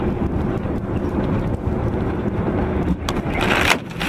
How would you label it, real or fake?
real